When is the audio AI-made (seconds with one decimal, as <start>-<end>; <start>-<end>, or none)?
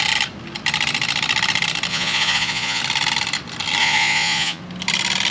1.9-2.8; 3.8-4.6